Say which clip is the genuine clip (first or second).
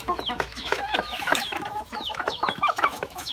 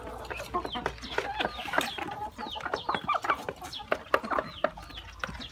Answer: second